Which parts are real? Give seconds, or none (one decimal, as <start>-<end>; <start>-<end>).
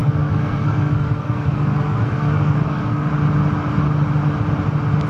3.1-5.1